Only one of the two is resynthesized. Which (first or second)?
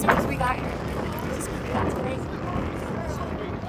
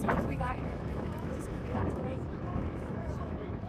second